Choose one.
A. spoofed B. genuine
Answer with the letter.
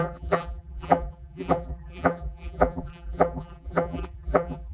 A